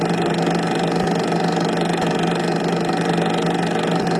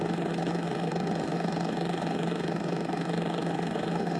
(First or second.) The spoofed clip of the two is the second